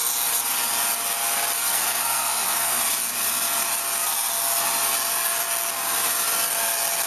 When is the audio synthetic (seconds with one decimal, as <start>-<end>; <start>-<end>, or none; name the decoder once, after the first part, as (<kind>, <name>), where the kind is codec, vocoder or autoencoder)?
1.6-2.8 (codec, SNAC)